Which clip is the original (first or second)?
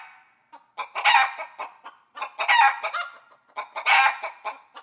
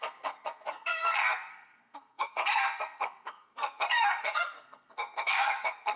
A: first